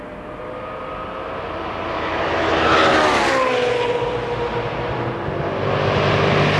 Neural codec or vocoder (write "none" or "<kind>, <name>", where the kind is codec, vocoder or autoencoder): none